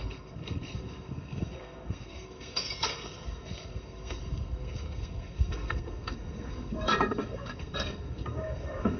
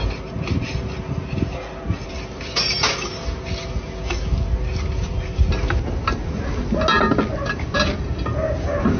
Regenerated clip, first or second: first